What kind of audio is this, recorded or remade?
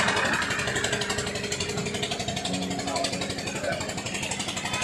recorded